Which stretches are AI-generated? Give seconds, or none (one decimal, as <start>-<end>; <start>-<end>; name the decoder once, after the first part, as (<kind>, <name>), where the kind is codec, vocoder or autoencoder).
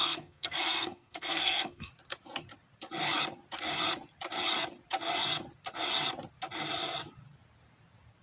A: 0.0-1.9 (codec, SNAC)